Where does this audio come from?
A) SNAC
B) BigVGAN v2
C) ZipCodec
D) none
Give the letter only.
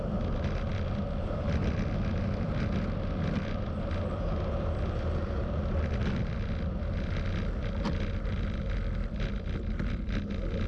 D